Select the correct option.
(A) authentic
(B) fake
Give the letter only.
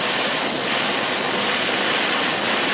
A